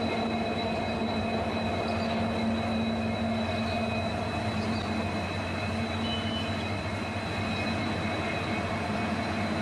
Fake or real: real